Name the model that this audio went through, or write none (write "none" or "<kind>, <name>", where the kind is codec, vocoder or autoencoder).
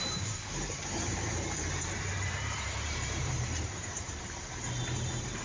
vocoder, BigVGAN v2